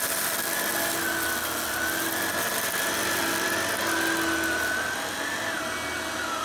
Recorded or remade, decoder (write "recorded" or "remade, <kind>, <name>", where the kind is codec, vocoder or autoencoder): recorded